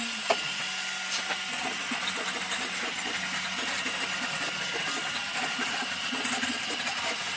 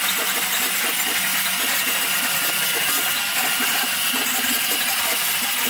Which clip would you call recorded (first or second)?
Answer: second